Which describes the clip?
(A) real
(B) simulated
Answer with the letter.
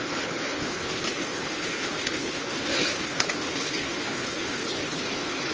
B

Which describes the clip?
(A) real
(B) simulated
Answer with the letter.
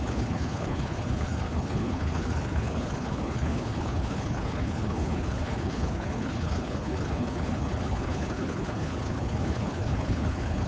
B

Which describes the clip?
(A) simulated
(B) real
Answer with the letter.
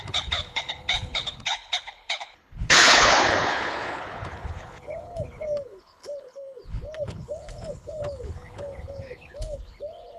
A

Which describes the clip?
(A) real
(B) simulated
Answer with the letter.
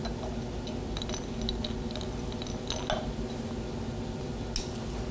A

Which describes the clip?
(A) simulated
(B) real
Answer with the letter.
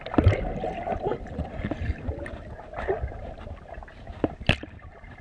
B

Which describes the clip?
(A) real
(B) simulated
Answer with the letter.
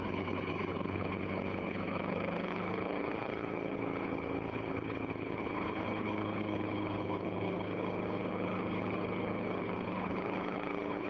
B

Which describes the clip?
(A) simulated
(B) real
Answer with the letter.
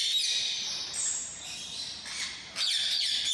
B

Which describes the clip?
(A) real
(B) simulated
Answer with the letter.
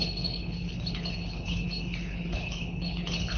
B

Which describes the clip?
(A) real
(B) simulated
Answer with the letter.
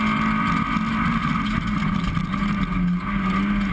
A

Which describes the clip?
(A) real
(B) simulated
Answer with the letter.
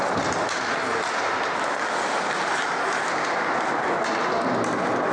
A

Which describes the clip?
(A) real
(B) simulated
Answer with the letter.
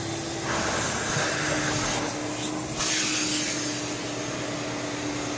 A